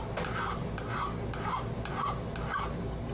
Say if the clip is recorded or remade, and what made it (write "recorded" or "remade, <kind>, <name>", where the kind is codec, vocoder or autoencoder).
recorded